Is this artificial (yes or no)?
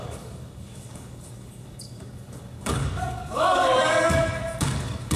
yes